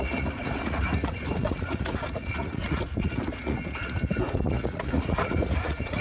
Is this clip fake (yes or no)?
yes